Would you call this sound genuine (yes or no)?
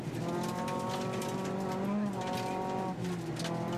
yes